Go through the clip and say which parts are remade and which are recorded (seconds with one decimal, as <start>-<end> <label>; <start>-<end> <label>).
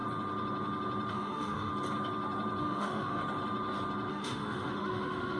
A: 0.0-1.1 recorded; 1.1-1.7 remade; 1.7-2.6 recorded; 2.6-3.2 remade; 3.2-4.1 recorded; 4.1-5.4 remade